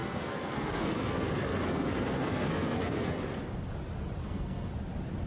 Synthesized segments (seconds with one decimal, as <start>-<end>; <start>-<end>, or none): 0.0-3.2; 4.2-4.7